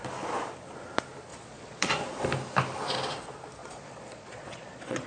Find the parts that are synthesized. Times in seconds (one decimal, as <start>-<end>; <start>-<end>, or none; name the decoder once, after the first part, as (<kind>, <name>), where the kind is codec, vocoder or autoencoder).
1.3-1.9 (vocoder, Vocos); 3.6-5.1